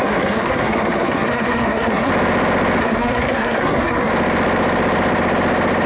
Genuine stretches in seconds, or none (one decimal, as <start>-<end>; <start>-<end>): 2.1-2.8; 4.1-5.9